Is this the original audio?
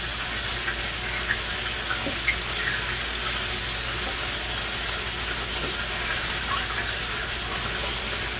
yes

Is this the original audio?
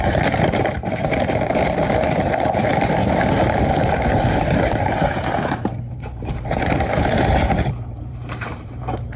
no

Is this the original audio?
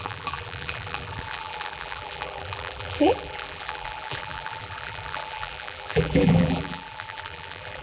no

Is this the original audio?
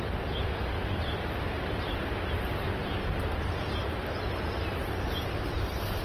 yes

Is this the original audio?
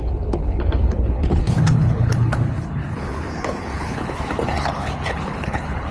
no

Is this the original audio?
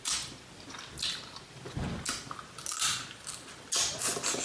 yes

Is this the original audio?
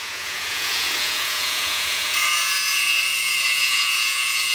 no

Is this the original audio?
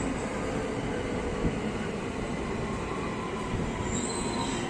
yes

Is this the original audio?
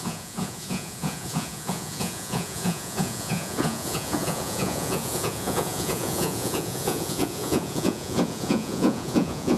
no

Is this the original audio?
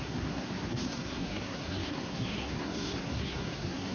no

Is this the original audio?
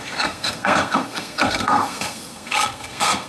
no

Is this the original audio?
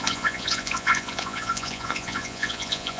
no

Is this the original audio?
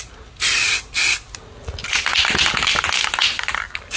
yes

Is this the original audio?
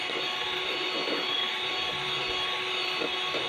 yes